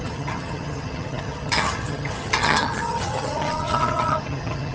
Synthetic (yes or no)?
yes